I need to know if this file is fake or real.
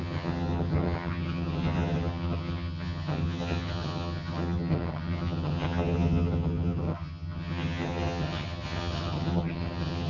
fake